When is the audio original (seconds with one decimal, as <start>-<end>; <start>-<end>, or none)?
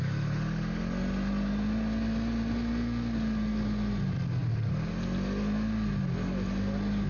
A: 0.0-7.1